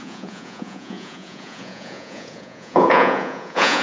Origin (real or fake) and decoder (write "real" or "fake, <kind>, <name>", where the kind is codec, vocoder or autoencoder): fake, vocoder, Vocos